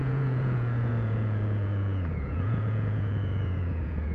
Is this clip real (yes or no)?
no